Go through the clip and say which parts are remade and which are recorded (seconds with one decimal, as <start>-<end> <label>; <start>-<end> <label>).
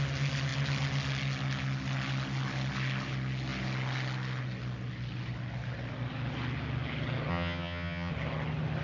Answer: 0.0-7.3 recorded; 7.3-8.1 remade; 8.1-8.8 recorded